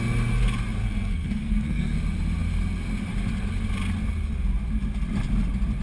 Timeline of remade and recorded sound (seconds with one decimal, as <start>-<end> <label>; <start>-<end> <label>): 0.0-0.8 recorded; 0.8-2.0 remade; 2.0-5.8 recorded

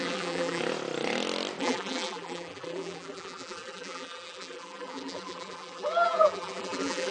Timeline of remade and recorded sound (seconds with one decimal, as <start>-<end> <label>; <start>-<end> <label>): 0.0-0.6 remade; 0.6-1.6 recorded; 1.6-7.1 remade

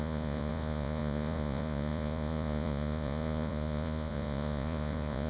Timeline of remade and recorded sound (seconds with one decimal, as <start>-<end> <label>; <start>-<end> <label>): 0.0-5.3 remade

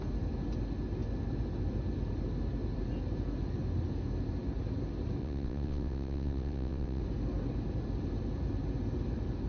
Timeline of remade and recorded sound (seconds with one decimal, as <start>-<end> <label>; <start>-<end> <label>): 0.0-5.2 recorded; 5.2-7.0 remade; 7.0-9.5 recorded

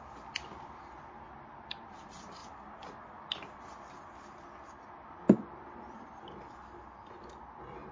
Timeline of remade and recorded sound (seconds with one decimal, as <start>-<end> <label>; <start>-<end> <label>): 0.0-7.9 recorded

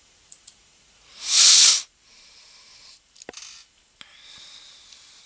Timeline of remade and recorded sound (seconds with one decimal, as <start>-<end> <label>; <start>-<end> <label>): 0.0-1.7 remade; 1.7-5.3 recorded

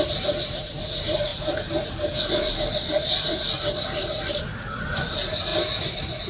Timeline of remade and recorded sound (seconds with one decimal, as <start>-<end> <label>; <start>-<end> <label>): 0.0-5.5 remade; 5.5-6.3 recorded